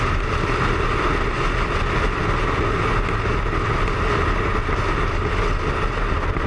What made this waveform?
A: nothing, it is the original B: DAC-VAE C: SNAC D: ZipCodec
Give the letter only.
A